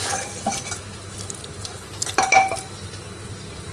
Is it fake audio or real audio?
real